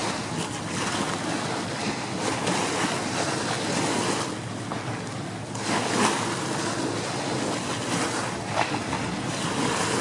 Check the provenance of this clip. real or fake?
real